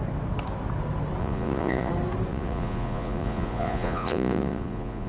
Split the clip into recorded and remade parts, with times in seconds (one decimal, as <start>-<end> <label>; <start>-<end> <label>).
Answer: 0.0-1.2 recorded; 1.2-1.9 remade; 1.9-2.3 recorded; 2.3-5.1 remade